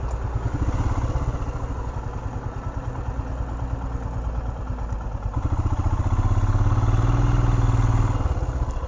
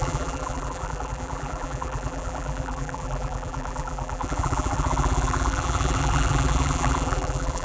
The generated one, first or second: second